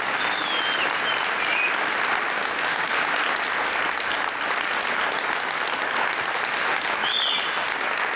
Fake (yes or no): no